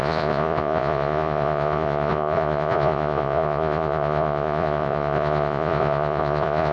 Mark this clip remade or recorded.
remade